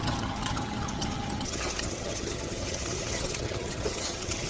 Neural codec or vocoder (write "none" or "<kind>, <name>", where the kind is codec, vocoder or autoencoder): vocoder, HiFi-GAN